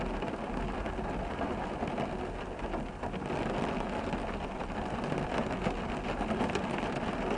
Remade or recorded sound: recorded